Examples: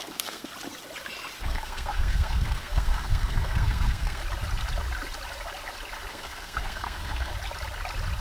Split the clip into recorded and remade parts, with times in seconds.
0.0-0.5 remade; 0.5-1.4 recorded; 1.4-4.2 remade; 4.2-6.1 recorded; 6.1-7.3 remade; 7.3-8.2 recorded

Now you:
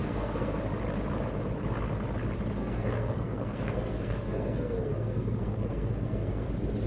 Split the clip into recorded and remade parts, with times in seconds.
0.0-0.6 remade; 0.6-2.6 recorded; 2.6-6.5 remade; 6.5-6.9 recorded

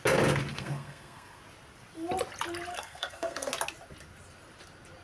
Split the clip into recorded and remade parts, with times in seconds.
0.0-0.5 recorded; 0.5-1.4 remade; 1.4-2.7 recorded; 2.7-3.5 remade; 3.5-5.0 recorded

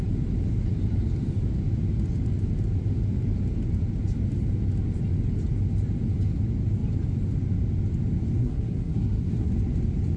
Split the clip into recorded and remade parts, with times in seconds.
0.0-8.4 recorded; 8.4-9.5 remade; 9.5-10.2 recorded

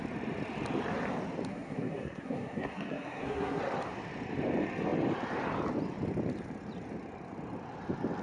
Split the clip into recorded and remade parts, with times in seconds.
0.0-1.5 recorded; 1.5-3.6 remade; 3.6-8.2 recorded

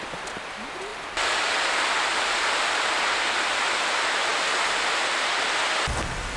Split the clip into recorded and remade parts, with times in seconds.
0.0-6.4 recorded

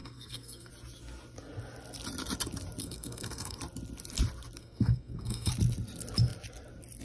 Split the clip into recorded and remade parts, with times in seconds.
0.0-0.7 remade; 0.7-2.8 recorded; 2.8-3.6 remade; 3.6-4.6 recorded; 4.6-5.5 remade; 5.5-7.0 recorded